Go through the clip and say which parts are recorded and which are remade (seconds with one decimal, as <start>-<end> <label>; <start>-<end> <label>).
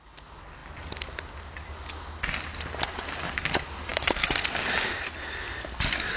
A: 0.0-6.2 recorded